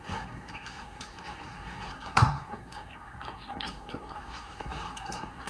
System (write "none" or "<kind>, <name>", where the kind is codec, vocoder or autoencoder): codec, SNAC